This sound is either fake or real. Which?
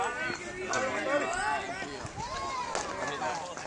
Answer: real